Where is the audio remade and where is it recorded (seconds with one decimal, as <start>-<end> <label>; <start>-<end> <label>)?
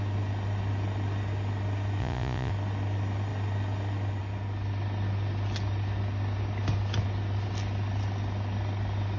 0.0-2.0 recorded; 2.0-2.5 remade; 2.5-9.2 recorded